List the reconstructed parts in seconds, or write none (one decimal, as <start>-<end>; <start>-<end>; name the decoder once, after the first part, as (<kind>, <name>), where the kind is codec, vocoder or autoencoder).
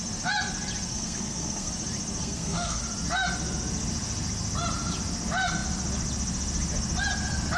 0.9-1.7 (codec, SNAC); 2.2-2.8